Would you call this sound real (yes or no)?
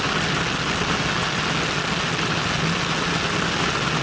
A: yes